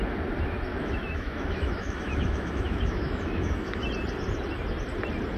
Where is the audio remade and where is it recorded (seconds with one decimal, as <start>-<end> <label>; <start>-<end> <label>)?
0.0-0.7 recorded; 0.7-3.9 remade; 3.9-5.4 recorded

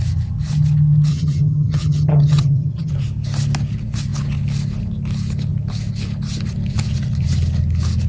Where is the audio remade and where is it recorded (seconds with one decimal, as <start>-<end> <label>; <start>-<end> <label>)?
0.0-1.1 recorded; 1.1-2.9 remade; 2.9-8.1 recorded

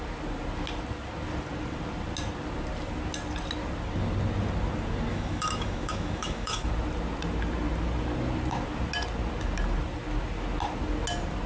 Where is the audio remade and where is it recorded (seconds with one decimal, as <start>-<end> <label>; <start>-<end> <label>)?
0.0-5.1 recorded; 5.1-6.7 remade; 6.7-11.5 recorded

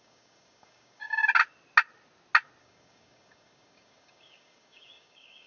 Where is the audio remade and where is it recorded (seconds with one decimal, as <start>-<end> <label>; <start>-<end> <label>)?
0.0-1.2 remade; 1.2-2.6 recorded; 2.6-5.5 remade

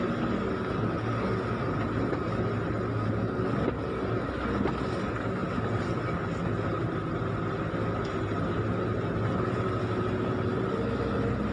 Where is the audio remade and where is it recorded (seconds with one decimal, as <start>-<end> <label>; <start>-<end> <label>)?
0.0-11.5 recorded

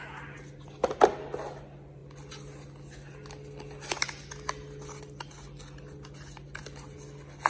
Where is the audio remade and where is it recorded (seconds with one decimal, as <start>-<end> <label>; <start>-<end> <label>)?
0.0-7.5 recorded